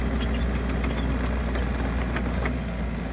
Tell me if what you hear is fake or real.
real